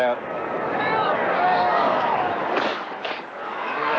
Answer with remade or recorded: remade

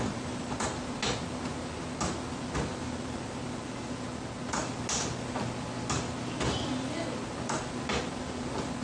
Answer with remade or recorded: recorded